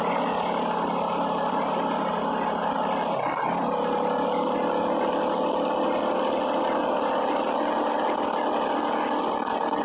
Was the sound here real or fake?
real